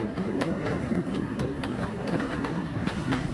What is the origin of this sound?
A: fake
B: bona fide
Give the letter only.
A